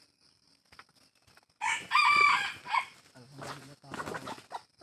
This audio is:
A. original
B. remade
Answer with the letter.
A